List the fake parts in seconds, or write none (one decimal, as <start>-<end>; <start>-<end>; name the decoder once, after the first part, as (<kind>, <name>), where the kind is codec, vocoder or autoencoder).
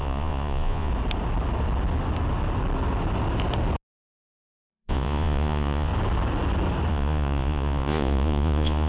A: 0.0-0.9 (vocoder, Vocos); 4.7-5.9; 6.9-8.9